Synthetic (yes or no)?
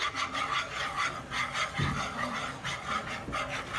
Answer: no